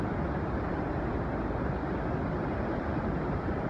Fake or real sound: real